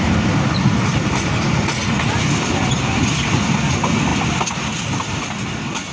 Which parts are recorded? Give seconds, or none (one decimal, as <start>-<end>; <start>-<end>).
0.0-5.9

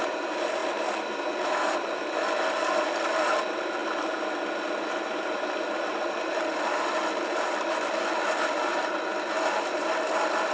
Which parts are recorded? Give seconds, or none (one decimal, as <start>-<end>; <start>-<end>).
0.0-10.5

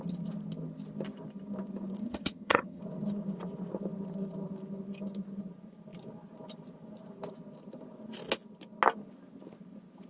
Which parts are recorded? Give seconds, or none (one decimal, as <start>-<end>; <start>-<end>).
0.0-2.0; 2.8-10.1

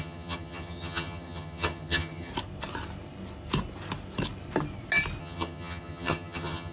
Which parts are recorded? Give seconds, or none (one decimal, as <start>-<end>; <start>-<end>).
2.3-5.2

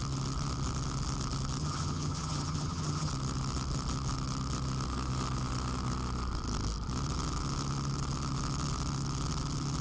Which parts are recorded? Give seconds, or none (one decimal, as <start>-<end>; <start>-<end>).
0.0-1.6; 3.1-9.8

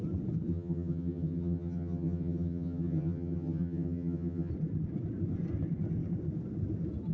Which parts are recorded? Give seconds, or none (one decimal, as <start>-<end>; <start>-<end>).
0.0-0.5; 4.5-7.1